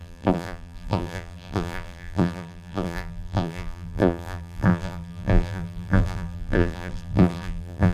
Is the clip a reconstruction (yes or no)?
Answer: yes